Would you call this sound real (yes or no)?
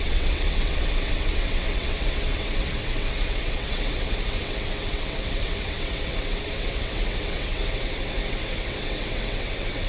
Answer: no